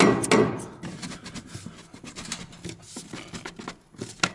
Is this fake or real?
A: real